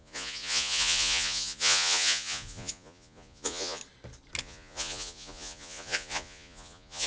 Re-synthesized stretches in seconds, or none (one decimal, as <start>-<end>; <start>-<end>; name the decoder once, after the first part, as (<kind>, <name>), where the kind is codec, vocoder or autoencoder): 0.0-3.8 (vocoder, Vocos); 4.4-7.1